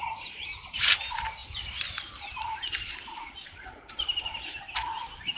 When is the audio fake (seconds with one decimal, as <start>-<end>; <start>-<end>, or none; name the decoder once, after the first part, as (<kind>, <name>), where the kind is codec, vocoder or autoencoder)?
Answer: 0.0-0.9 (vocoder, BigVGAN v2); 1.4-4.6